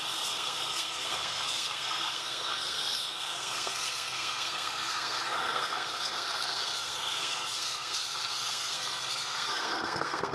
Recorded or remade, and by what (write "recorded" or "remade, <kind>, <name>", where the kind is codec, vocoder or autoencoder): remade, codec, SNAC